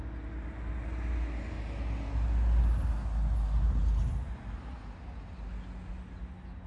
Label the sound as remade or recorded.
recorded